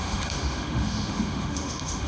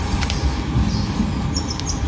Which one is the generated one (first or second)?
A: first